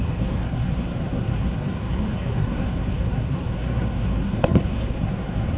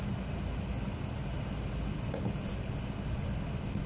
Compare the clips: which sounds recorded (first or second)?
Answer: second